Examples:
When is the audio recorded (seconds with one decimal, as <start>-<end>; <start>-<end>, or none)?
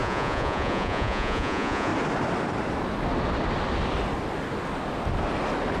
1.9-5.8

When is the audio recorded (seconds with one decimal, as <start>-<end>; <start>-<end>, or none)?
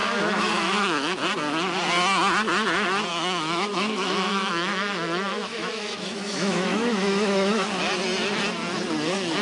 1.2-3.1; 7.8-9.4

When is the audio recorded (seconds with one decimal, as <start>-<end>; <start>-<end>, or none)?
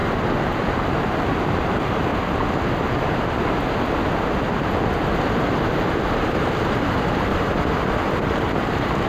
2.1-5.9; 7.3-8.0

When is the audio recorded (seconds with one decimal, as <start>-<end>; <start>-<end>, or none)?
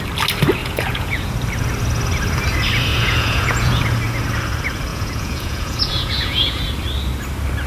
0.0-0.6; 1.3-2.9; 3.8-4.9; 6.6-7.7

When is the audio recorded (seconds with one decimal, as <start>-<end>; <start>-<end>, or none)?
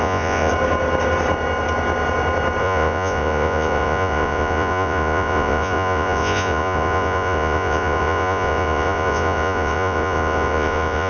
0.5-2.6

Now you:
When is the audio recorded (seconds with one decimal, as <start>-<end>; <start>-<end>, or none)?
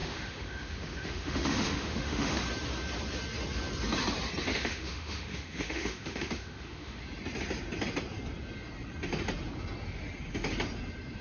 2.4-4.5; 7.0-11.2